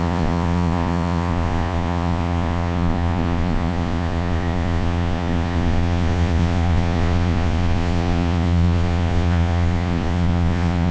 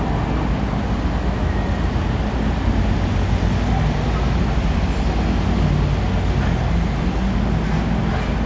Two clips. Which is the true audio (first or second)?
second